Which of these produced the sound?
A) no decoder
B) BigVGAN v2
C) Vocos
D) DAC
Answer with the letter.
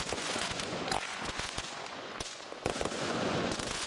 C